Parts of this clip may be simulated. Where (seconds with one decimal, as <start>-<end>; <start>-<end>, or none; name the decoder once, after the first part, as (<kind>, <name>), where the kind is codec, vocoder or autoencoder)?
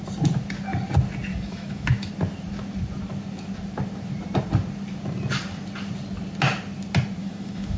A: 1.3-2.1 (autoencoder, DAC-VAE); 7.2-7.8